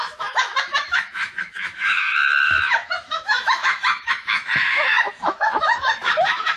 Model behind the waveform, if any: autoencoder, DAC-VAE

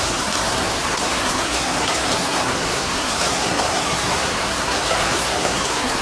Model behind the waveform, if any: codec, SNAC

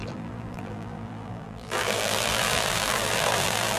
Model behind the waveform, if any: vocoder, BigVGAN v2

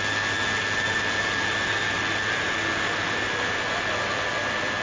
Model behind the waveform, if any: none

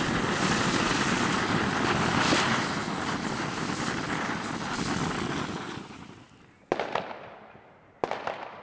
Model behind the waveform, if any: none